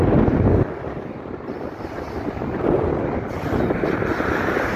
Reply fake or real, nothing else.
real